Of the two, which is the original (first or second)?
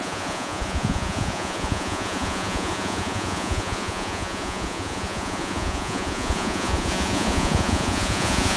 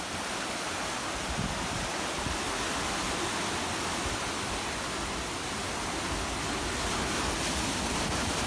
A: second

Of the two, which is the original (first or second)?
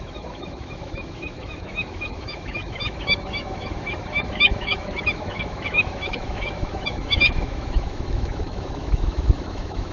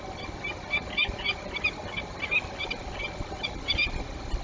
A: second